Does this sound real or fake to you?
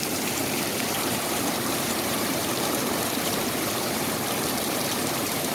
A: fake